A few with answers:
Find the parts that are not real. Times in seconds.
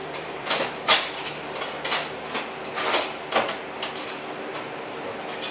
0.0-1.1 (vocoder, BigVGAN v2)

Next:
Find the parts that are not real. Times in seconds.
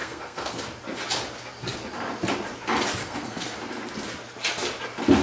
0.0-0.6 (codec, SNAC); 3.0-3.7